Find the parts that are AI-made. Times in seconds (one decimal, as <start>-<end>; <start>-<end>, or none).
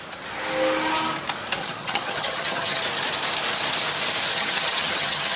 1.6-2.8; 4.3-5.4